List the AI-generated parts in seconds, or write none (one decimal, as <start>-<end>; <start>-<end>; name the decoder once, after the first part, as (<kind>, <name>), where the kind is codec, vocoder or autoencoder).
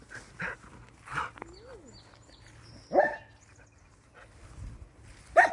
none